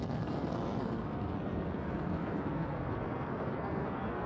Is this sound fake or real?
fake